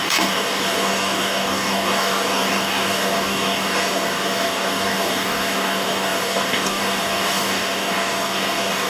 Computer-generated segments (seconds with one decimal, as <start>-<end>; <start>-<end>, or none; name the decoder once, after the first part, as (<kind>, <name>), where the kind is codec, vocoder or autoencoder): 0.0-8.9 (codec, DAC)